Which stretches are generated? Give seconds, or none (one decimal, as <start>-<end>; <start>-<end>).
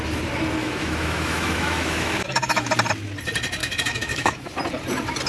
0.6-2.7; 3.6-4.5